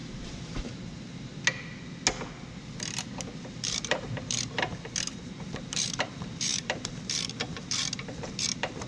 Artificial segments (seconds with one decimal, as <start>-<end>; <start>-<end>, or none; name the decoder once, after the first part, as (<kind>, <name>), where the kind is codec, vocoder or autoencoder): 0.0-1.3 (vocoder, BigVGAN v2); 3.4-8.9